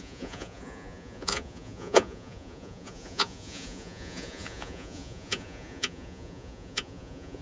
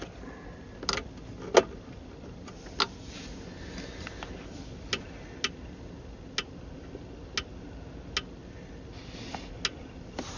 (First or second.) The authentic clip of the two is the second